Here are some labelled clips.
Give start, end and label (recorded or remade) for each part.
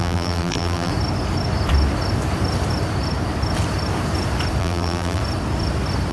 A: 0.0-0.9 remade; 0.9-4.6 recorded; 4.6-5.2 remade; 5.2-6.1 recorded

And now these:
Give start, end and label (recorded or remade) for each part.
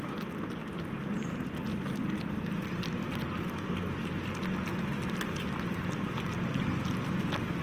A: 0.0-7.6 recorded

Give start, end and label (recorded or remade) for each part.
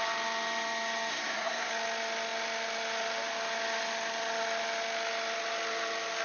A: 0.0-1.1 recorded; 1.1-1.7 remade; 1.7-6.2 recorded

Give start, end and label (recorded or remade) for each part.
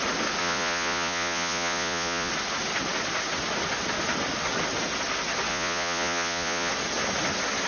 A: 0.0-0.4 recorded; 0.4-2.3 remade; 2.3-5.5 recorded; 5.5-6.7 remade; 6.7-7.7 recorded